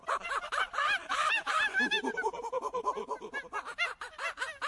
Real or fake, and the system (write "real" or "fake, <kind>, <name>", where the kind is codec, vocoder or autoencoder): fake, vocoder, BigVGAN v2